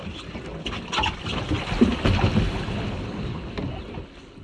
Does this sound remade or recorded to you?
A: recorded